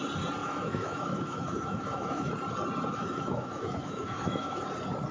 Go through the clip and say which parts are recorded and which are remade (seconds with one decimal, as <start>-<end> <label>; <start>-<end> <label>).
0.0-0.4 recorded; 0.4-2.3 remade; 2.3-2.9 recorded; 2.9-4.6 remade; 4.6-5.1 recorded